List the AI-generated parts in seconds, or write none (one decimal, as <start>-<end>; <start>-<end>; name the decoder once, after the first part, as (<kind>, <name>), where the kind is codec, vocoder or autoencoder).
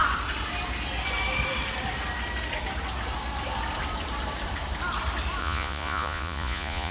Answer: 5.4-6.9 (vocoder, Vocos)